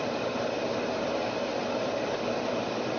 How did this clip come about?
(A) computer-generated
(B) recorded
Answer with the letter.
B